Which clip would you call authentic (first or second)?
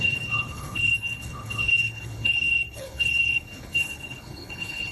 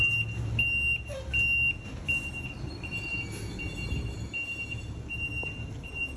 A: second